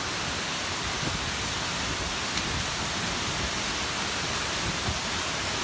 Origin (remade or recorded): recorded